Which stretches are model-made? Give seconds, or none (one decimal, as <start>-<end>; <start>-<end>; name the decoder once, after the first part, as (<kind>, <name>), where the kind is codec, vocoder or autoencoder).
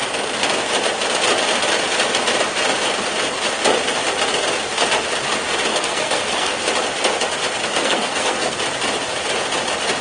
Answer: 5.7-6.6 (codec, SNAC); 7.8-8.6